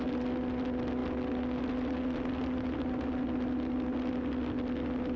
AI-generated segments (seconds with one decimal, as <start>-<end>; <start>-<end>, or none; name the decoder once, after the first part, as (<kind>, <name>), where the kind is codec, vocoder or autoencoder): none